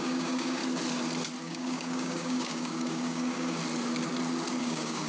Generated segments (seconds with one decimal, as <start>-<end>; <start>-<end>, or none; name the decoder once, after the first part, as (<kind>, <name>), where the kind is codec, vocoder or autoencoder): 0.0-0.6 (codec, DAC); 1.4-3.6; 4.6-5.1